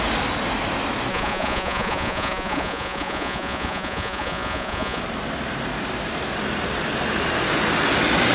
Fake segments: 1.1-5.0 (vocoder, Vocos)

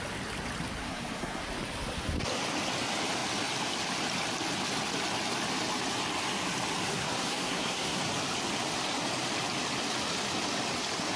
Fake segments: 0.8-1.4 (codec, SNAC); 6.9-8.0

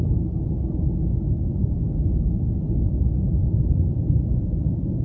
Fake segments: none

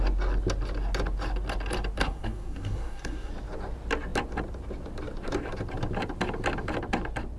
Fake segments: 2.0-3.3 (codec, SNAC)

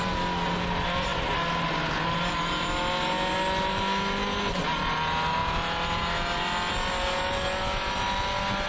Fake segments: none

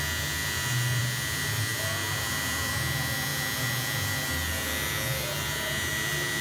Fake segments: none

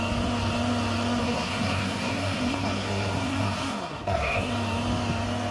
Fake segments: 1.2-4.5 (codec, SNAC)

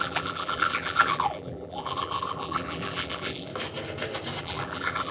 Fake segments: 0.0-3.5 (vocoder, BigVGAN v2); 4.4-5.1